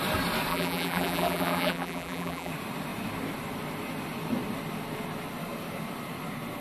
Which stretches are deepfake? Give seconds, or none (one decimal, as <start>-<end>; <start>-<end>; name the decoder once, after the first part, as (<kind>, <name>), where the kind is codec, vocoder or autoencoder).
0.5-2.5 (vocoder, BigVGAN v2)